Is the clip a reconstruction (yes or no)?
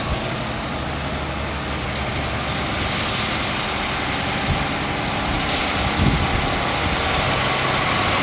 no